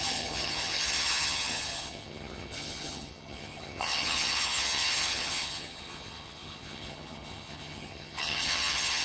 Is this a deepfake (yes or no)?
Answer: yes